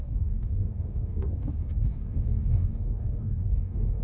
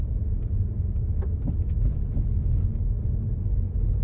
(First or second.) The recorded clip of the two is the second